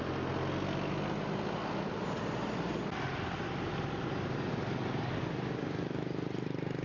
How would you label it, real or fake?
real